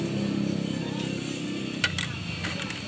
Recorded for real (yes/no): yes